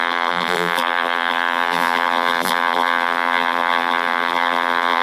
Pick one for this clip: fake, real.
fake